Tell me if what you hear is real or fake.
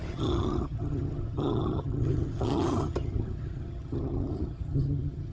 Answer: fake